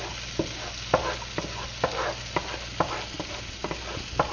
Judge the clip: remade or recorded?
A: recorded